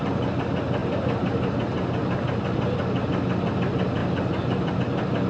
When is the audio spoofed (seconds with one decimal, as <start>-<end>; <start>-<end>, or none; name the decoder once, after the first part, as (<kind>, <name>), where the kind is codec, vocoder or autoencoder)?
none